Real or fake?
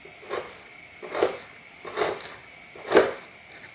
real